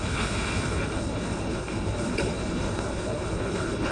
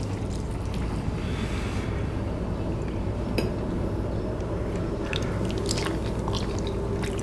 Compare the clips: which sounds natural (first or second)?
second